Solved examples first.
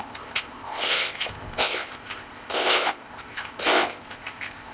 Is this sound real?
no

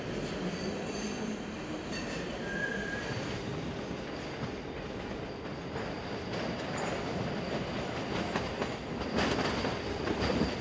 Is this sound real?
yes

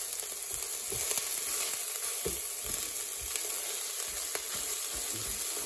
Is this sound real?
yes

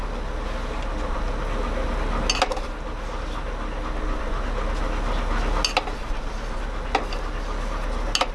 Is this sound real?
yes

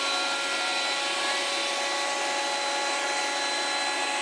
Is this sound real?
yes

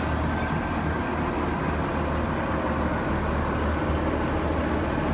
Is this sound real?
yes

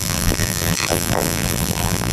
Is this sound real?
no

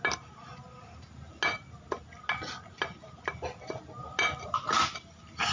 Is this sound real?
yes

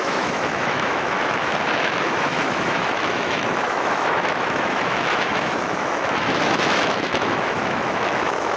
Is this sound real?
no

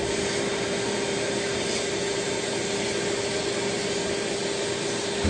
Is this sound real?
yes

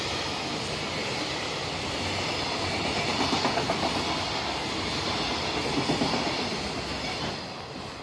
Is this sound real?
yes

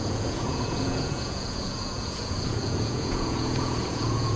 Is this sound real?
no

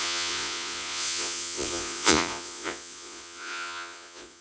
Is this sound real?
no